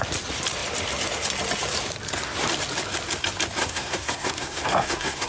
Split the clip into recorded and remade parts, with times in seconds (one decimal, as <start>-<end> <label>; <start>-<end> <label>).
0.0-3.6 recorded; 3.6-5.3 remade

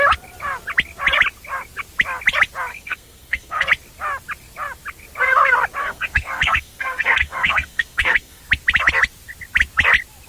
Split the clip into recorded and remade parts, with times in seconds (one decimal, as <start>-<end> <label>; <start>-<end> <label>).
0.0-2.7 recorded; 2.7-3.7 remade; 3.7-5.8 recorded; 5.8-8.4 remade; 8.4-10.3 recorded

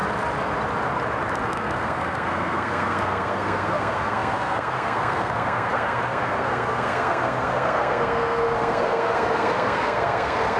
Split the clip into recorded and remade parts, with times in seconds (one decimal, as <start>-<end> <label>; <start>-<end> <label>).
0.0-1.4 recorded; 1.4-10.6 remade